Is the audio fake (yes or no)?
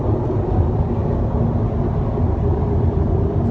no